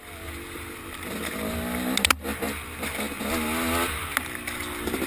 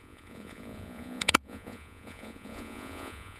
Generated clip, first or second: second